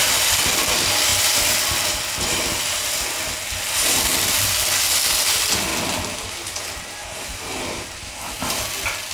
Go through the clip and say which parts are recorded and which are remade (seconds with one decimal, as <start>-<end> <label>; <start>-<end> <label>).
0.0-9.1 recorded